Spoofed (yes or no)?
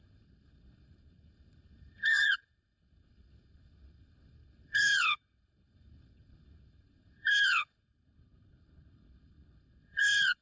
yes